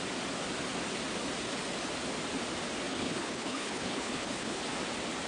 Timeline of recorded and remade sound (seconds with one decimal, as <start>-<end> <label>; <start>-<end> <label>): 0.0-2.9 recorded; 2.9-4.6 remade; 4.6-5.3 recorded